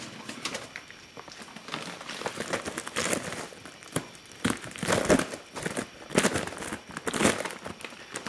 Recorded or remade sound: recorded